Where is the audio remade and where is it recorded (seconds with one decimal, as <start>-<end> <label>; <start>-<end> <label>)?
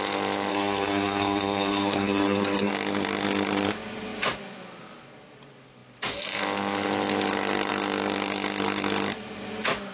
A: 0.0-0.5 recorded; 0.5-2.7 remade; 2.7-9.9 recorded